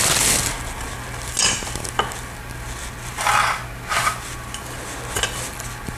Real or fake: real